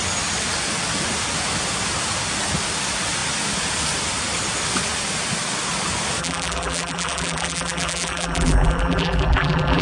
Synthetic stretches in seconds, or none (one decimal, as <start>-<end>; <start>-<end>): 6.2-9.8